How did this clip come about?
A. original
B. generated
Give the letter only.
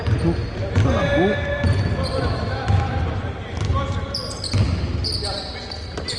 A